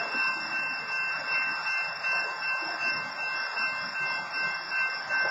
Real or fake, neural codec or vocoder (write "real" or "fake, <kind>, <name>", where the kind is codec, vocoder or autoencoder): real